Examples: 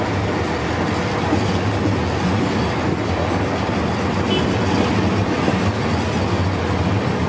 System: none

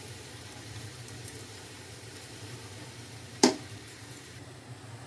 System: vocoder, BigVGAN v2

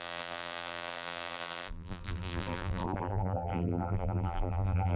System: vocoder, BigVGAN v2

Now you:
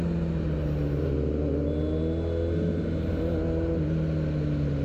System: none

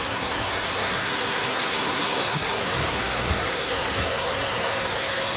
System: codec, SNAC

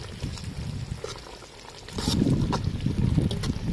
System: none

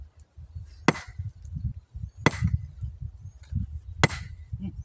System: none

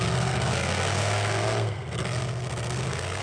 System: codec, SNAC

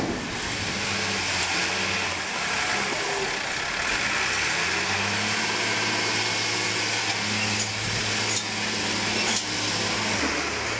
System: none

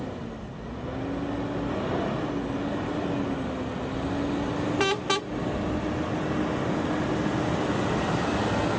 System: none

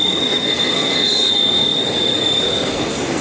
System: codec, SNAC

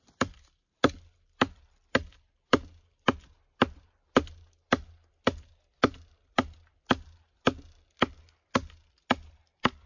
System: none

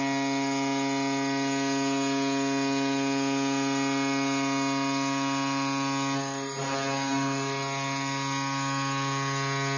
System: none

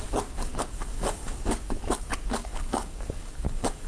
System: codec, DAC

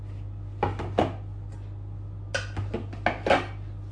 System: none